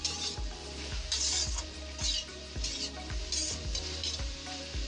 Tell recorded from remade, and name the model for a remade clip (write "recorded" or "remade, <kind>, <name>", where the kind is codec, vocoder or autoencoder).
remade, vocoder, BigVGAN v2